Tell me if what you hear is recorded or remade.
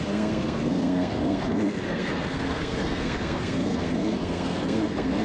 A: remade